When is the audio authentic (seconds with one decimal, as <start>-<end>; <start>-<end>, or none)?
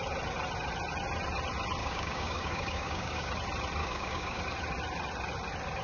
0.0-1.8; 3.3-3.8; 4.4-5.8